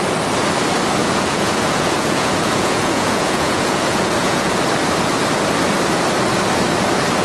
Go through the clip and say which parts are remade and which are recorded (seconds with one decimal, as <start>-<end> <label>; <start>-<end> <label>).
0.0-1.0 recorded; 1.0-4.6 remade; 4.6-7.2 recorded